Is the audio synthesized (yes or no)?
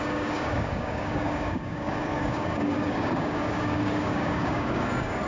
yes